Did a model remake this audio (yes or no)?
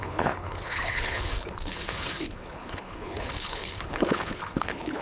yes